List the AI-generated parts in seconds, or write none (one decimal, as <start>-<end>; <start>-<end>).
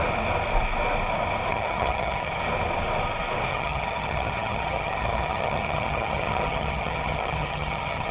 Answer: 1.5-2.3; 3.5-8.1